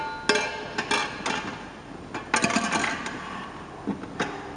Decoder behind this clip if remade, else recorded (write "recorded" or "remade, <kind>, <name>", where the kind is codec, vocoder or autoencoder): recorded